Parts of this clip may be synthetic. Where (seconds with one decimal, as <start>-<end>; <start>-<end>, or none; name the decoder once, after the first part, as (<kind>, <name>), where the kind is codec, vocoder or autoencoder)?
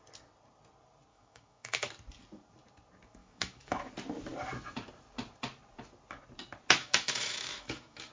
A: 1.1-1.9 (autoencoder, DAC-VAE); 3.2-3.9; 6.8-8.1